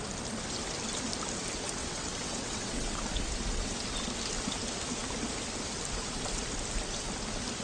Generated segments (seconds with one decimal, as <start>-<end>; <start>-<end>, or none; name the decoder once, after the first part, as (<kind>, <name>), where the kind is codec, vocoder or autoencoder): 1.8-3.0 (vocoder, WaveNeXt)